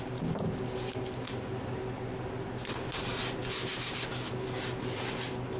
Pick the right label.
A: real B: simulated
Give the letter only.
A